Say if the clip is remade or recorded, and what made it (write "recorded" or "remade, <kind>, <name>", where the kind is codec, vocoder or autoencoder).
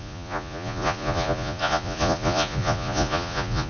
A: remade, vocoder, Vocos